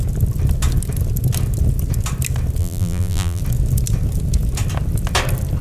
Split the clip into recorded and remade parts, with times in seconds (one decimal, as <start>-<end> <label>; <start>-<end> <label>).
0.0-2.6 recorded; 2.6-3.4 remade; 3.4-5.6 recorded